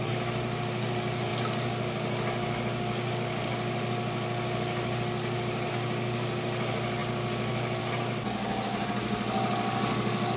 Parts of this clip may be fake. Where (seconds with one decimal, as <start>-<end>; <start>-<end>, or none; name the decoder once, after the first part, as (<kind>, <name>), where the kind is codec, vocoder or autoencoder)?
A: none